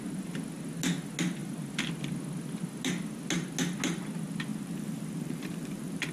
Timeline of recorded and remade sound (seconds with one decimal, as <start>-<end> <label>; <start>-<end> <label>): 0.0-4.5 recorded; 4.5-6.1 remade